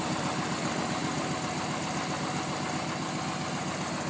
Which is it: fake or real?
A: real